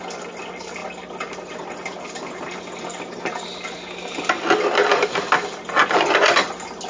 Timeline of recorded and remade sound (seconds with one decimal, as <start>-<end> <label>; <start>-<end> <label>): 0.0-6.9 recorded